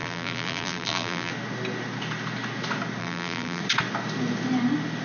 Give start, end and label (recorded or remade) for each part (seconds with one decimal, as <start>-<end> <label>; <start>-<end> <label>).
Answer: 0.0-1.3 remade; 1.3-3.0 recorded; 3.0-3.6 remade; 3.6-5.0 recorded